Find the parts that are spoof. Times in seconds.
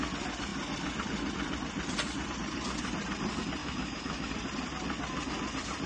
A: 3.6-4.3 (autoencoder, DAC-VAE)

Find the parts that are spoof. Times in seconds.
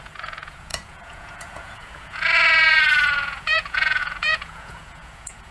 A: 0.0-5.5 (vocoder, Vocos)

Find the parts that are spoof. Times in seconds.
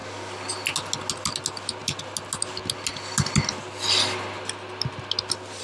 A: none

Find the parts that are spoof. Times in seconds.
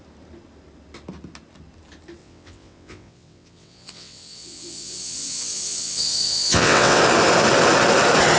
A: 2.2-7.0 (vocoder, WaveNeXt)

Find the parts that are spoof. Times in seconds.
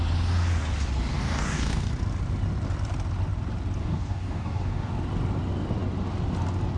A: 1.1-1.9 (codec, DAC); 3.8-4.9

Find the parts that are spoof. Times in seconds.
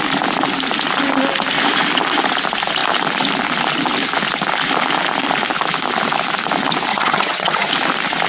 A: 6.9-7.7 (vocoder, HiFi-GAN)